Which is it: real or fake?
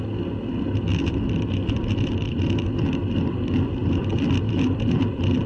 real